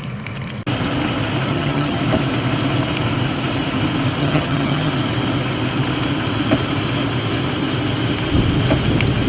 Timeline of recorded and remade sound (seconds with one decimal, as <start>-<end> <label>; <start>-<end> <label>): 0.0-1.5 recorded; 1.5-2.0 remade; 2.0-4.2 recorded; 4.2-4.9 remade; 4.9-9.3 recorded